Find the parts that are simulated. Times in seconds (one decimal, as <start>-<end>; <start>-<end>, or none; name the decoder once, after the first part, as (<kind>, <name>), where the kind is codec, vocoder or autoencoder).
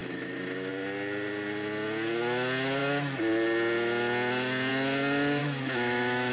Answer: 0.0-0.7 (autoencoder, DAC-VAE); 5.4-6.3